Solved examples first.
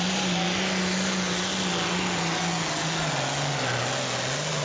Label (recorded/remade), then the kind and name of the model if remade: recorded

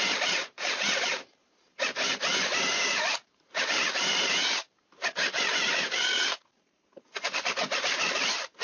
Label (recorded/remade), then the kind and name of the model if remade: remade, vocoder, BigVGAN v2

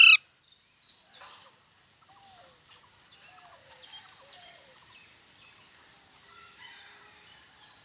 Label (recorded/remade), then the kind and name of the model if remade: remade, vocoder, BigVGAN v2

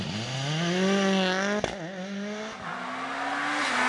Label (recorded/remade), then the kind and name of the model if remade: recorded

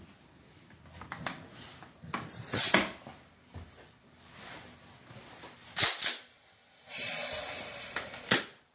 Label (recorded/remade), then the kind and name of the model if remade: remade, vocoder, BigVGAN v2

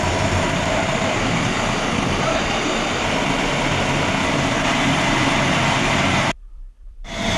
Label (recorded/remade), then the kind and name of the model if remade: remade, vocoder, BigVGAN v2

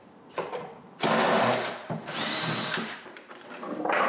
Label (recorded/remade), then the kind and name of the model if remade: remade, vocoder, BigVGAN v2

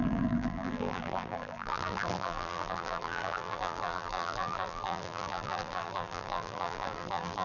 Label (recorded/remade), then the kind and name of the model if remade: remade, vocoder, BigVGAN v2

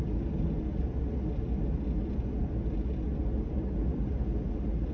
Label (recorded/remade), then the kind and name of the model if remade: recorded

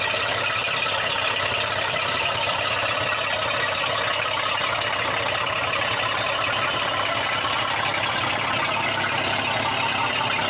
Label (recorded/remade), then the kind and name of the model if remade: recorded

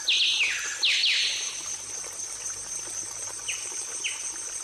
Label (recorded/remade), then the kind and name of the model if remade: recorded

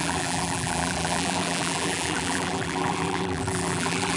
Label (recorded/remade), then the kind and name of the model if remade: remade, vocoder, BigVGAN v2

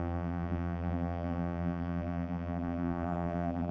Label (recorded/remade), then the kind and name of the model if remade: remade, vocoder, BigVGAN v2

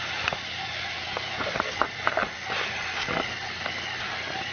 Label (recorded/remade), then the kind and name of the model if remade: recorded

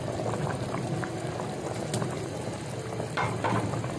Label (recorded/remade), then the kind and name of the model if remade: recorded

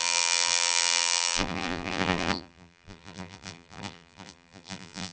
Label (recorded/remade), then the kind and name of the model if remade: remade, vocoder, BigVGAN v2